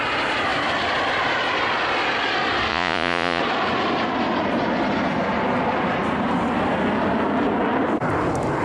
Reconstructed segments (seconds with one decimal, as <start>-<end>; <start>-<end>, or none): 2.7-3.4